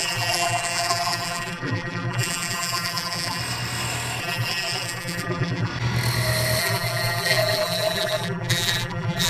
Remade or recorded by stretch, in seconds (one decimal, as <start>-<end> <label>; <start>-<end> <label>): 0.0-3.4 remade; 3.4-4.2 recorded; 4.2-5.7 remade; 5.7-6.6 recorded; 6.6-9.3 remade